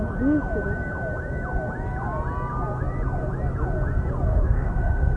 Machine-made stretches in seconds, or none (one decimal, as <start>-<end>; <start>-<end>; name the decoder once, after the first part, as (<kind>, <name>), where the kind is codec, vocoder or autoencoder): 4.3-5.2 (autoencoder, DAC-VAE)